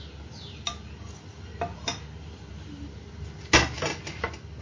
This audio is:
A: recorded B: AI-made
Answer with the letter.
A